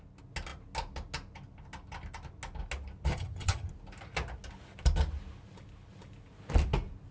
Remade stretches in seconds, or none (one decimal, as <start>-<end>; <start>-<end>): 3.1-3.7